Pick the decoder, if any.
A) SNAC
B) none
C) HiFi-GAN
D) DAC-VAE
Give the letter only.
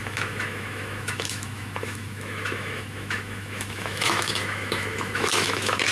D